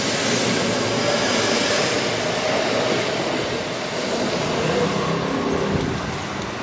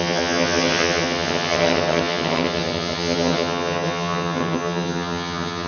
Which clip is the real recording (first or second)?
first